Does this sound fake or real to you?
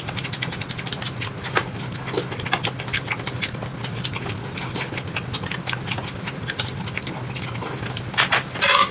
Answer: real